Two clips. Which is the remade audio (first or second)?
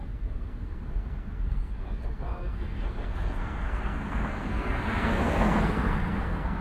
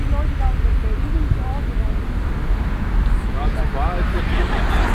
first